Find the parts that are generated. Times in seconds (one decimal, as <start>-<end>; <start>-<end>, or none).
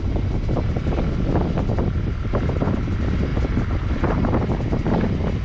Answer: none